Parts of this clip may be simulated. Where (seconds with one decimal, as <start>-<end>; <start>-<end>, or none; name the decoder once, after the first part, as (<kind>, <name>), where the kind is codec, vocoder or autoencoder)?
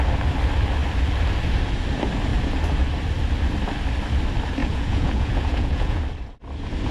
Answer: 4.6-6.0 (vocoder, Vocos)